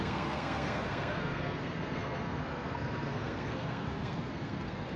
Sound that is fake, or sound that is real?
fake